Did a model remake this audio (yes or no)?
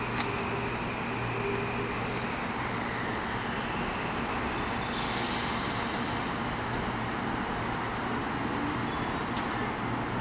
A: no